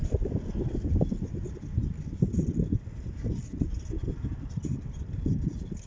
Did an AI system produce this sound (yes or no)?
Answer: no